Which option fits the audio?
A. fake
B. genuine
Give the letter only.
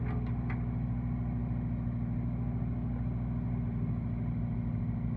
B